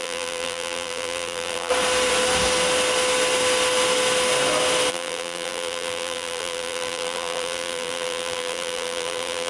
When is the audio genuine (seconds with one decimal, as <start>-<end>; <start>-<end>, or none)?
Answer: 1.7-4.9